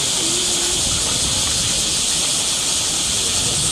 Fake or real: real